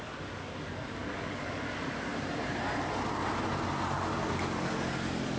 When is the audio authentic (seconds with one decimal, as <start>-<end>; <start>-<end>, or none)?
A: 2.1-5.4